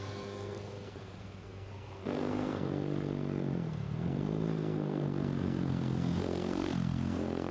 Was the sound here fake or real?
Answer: fake